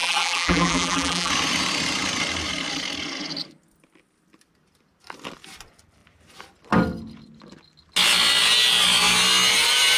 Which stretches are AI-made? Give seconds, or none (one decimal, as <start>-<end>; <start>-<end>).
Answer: 0.0-1.3